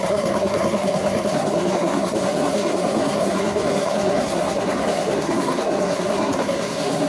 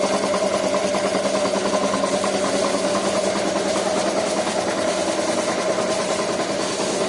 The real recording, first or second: second